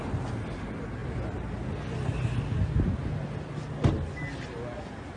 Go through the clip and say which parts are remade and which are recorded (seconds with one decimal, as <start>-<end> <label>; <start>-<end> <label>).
0.0-5.2 recorded

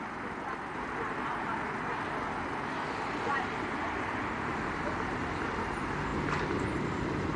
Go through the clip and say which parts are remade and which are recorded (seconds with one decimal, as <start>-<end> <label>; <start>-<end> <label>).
0.0-7.4 recorded

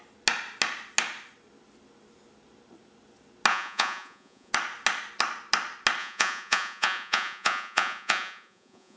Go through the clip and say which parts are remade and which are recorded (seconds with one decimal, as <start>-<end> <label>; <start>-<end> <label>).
0.0-3.5 recorded; 3.5-4.5 remade; 4.5-6.0 recorded; 6.0-9.0 remade

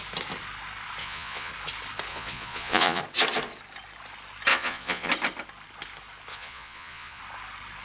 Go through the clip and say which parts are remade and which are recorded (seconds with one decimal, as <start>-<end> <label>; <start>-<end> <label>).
0.0-1.0 recorded; 1.0-1.5 remade; 1.5-2.1 recorded; 2.1-3.0 remade; 3.0-4.5 recorded; 4.5-5.1 remade; 5.1-6.3 recorded; 6.3-7.2 remade; 7.2-7.8 recorded